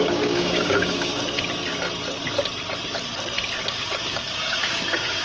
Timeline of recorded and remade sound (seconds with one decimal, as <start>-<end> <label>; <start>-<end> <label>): 0.0-1.1 remade; 1.1-3.7 recorded; 3.7-5.2 remade